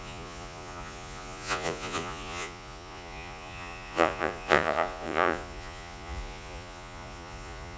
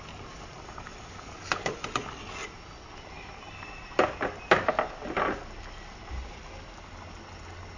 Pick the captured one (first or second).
second